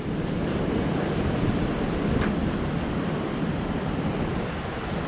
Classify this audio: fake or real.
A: real